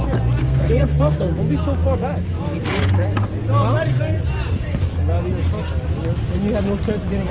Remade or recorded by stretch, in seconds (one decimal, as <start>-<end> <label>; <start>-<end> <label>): 0.0-0.4 recorded; 0.4-1.4 remade; 1.4-7.3 recorded